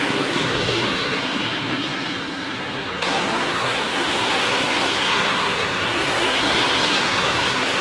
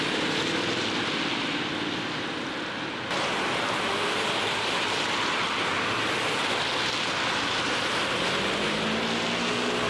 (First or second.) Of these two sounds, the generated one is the first